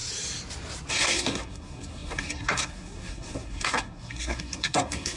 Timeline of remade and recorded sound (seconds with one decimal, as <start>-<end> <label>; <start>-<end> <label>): 0.0-0.9 recorded; 0.9-5.2 remade